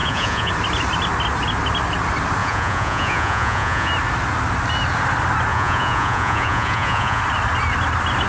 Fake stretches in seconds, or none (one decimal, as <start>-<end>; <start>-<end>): 0.0-0.5; 2.4-3.9; 5.5-7.2

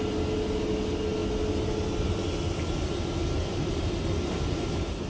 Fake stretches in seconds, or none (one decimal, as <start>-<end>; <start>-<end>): none